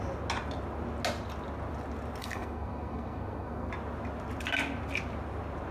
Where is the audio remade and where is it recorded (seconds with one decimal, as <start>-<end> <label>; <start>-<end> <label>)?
0.0-2.2 recorded; 2.2-3.7 remade; 3.7-5.7 recorded